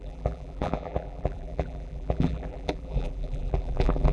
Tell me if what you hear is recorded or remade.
remade